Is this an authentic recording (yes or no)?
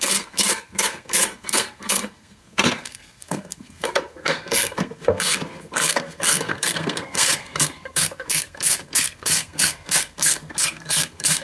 no